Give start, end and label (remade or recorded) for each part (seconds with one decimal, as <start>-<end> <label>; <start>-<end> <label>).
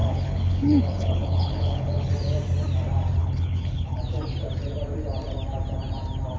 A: 0.0-2.1 remade; 2.1-3.2 recorded; 3.2-4.0 remade; 4.0-6.4 recorded